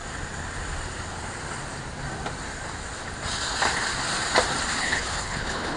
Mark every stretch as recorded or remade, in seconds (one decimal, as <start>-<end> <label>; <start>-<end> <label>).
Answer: 0.0-4.8 recorded; 4.8-5.8 remade